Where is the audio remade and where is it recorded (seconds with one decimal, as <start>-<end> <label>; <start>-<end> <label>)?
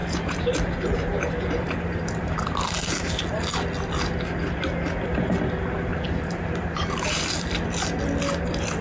0.0-3.2 remade; 3.2-5.9 recorded; 5.9-7.5 remade; 7.5-8.8 recorded